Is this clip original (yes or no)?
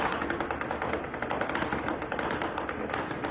yes